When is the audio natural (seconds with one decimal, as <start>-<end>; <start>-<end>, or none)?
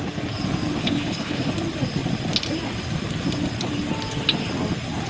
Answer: 0.0-0.8; 1.5-5.1